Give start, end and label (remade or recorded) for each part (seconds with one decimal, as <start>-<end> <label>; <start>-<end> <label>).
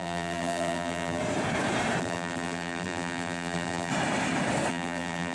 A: 0.0-1.2 remade; 1.2-2.0 recorded; 2.0-3.9 remade; 3.9-4.7 recorded; 4.7-5.3 remade